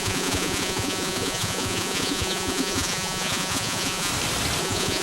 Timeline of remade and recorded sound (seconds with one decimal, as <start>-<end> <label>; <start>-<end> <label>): 0.0-4.1 remade; 4.1-4.6 recorded; 4.6-5.0 remade